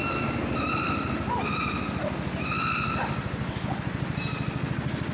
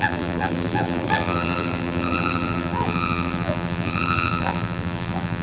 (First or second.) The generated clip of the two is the second